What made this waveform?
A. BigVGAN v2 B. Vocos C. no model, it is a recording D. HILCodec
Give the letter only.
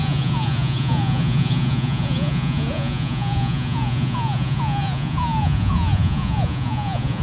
B